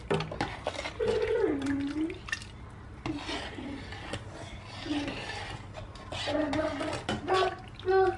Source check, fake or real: real